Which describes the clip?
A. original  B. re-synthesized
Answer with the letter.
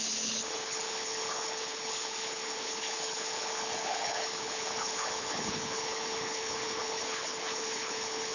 B